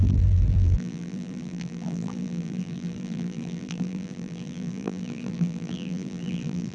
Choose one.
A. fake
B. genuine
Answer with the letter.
A